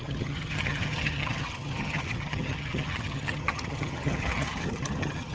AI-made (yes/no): yes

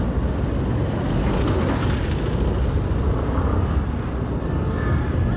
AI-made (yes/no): no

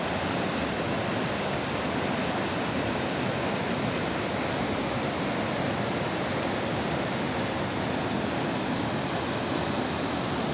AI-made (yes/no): no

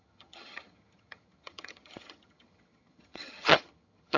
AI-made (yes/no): yes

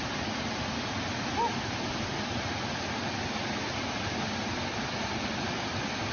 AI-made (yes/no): no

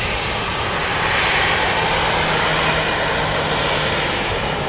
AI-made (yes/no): no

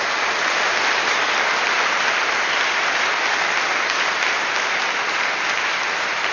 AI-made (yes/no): no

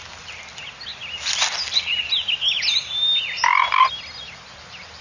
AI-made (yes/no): no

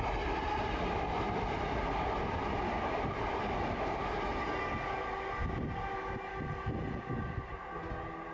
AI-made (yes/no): no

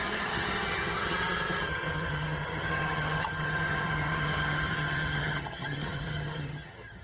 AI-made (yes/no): yes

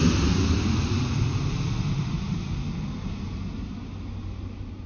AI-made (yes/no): no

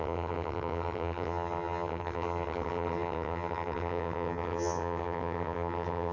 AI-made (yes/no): yes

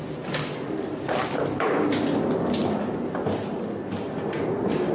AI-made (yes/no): no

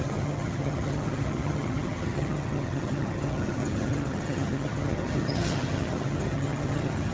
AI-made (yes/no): yes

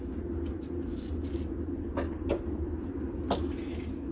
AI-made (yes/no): no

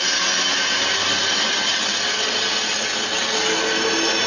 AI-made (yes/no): no